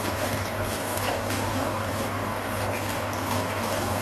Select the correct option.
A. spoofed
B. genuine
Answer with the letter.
A